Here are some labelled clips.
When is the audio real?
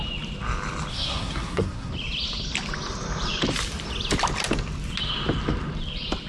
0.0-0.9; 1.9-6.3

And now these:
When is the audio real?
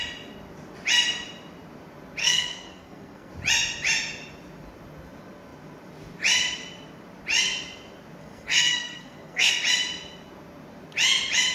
0.0-2.2; 3.3-8.2; 9.5-11.5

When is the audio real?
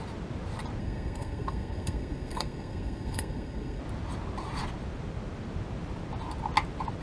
0.0-0.8; 3.8-7.0